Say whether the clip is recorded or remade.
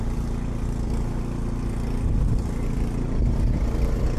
recorded